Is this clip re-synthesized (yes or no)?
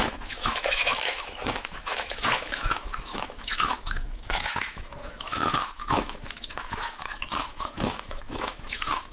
yes